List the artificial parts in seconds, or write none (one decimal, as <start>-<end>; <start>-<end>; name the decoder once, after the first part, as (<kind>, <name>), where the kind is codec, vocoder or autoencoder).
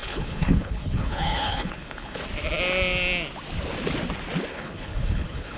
0.0-2.2 (codec, HILCodec); 4.5-5.6